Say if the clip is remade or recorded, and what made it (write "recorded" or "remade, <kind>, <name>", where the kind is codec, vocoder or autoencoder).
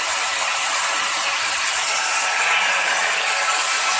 recorded